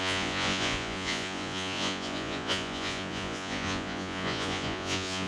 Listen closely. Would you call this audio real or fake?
fake